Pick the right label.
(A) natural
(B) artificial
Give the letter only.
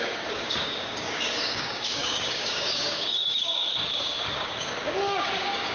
B